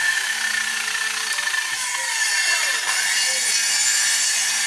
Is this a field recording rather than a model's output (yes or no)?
yes